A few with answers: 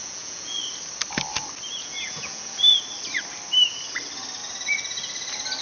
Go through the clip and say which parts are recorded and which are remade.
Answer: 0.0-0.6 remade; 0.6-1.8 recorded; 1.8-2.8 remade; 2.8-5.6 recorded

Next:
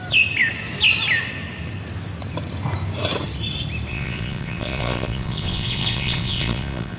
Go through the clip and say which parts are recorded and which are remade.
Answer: 0.0-3.9 recorded; 3.9-7.0 remade

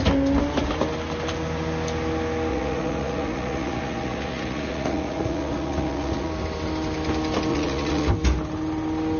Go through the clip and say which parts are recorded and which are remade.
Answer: 0.0-2.5 recorded; 2.5-6.3 remade; 6.3-7.5 recorded; 7.5-8.1 remade; 8.1-9.2 recorded

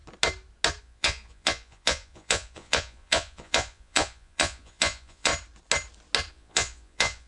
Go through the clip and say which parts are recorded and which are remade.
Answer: 0.0-0.8 recorded; 0.8-5.3 remade; 5.3-6.3 recorded; 6.3-7.3 remade

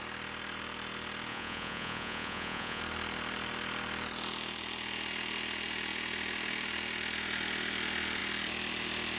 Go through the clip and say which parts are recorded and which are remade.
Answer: 0.0-1.3 recorded; 1.3-2.8 remade; 2.8-9.2 recorded

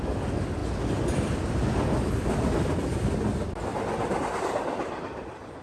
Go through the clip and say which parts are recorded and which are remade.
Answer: 0.0-5.6 recorded

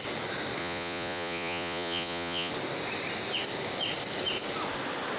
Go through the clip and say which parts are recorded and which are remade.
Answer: 0.0-0.6 recorded; 0.6-2.5 remade; 2.5-5.2 recorded